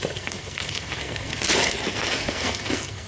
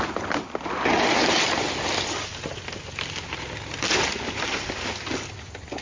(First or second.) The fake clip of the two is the first